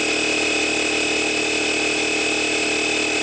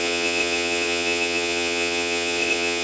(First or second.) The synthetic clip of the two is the second